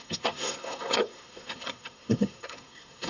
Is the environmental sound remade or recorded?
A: remade